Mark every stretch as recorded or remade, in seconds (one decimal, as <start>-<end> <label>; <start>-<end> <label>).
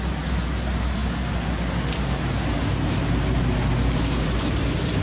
0.0-5.0 recorded